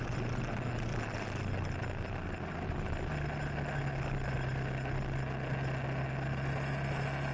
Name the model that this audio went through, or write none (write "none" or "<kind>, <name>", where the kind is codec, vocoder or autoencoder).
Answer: none